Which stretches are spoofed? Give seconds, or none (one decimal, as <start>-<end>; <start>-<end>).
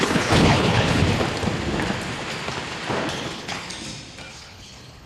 0.0-1.0; 3.1-3.7; 4.3-5.1